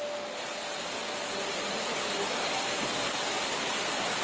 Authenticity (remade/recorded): recorded